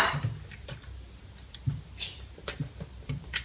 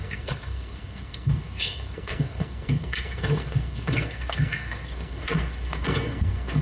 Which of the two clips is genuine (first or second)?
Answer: first